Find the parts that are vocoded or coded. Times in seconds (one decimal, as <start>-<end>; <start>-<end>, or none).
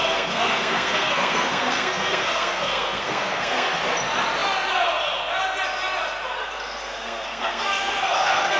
0.0-3.8; 6.4-8.6